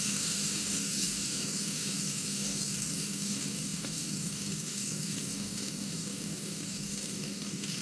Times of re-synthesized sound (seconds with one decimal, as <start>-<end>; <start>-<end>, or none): 0.0-7.8